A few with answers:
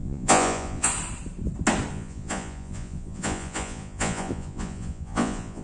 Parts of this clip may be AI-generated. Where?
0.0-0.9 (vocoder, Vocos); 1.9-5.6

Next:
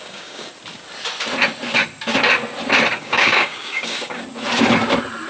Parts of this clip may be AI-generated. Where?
0.0-0.5 (codec, DAC); 2.9-4.2

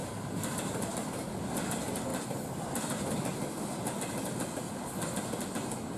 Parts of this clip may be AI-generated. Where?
0.0-1.3 (vocoder, BigVGAN v2); 2.1-3.1

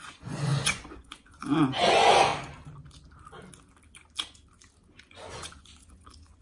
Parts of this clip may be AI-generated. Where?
0.0-2.3 (vocoder, Vocos); 5.0-6.4

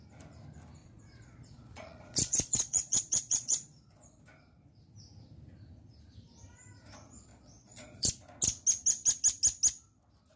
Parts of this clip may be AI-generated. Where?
0.8-4.2 (vocoder, Vocos); 7.3-8.1

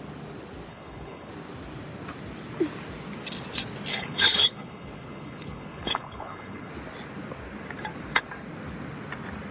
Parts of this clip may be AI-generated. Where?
0.7-1.3 (codec, HILCodec); 3.9-6.7

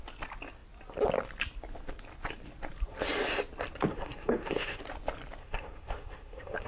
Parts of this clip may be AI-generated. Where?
3.9-4.8 (codec, SNAC); 5.4-6.7